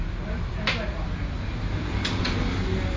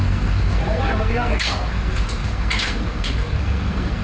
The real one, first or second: first